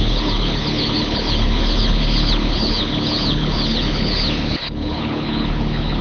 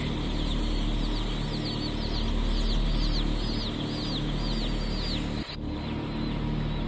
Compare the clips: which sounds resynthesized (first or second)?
first